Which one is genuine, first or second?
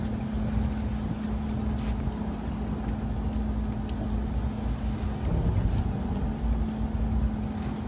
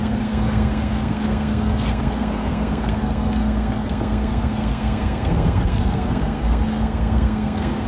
first